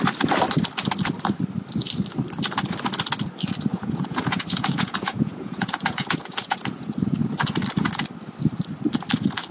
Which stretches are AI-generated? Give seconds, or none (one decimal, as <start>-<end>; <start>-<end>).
3.7-6.9